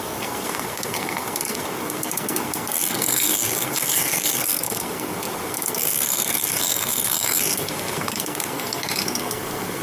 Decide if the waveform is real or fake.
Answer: fake